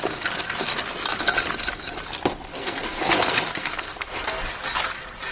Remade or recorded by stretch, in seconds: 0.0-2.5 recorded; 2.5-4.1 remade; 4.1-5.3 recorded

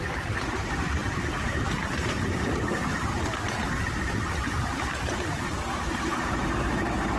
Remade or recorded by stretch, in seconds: 0.0-1.0 recorded; 1.0-3.1 remade; 3.1-7.2 recorded

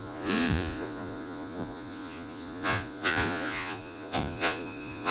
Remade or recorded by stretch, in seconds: 0.0-5.1 remade

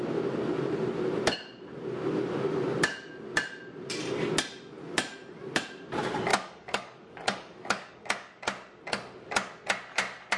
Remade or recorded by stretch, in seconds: 0.0-6.3 recorded; 6.3-8.4 remade; 8.4-10.4 recorded

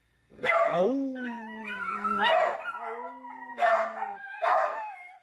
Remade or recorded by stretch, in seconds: 0.0-2.3 remade; 2.3-3.5 recorded; 3.5-5.2 remade

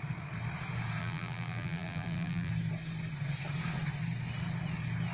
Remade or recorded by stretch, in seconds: 0.0-1.0 recorded; 1.0-2.5 remade; 2.5-5.1 recorded

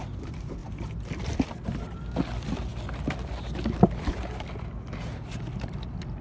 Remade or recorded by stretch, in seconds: 0.0-6.2 recorded

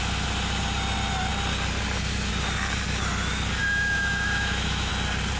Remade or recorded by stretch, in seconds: 0.0-3.6 recorded; 3.6-4.9 remade; 4.9-5.4 recorded